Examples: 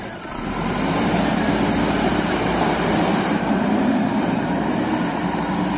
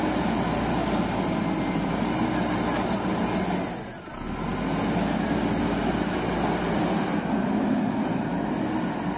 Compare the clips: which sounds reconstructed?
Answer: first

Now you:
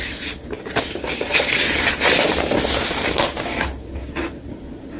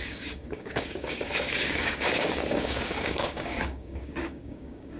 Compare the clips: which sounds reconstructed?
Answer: second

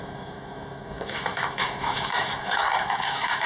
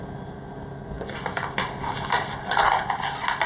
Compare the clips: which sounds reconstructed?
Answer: first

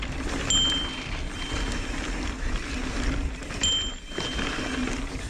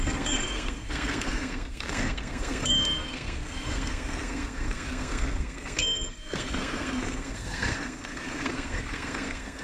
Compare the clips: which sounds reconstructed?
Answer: second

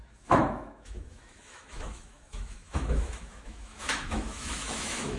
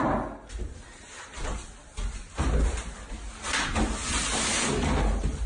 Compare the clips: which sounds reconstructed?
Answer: first